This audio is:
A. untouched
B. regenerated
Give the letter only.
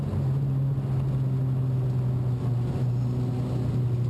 A